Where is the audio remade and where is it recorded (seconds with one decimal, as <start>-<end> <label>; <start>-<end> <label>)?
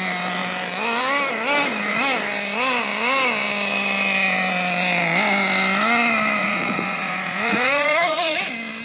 0.0-6.4 recorded; 6.4-8.4 remade; 8.4-8.8 recorded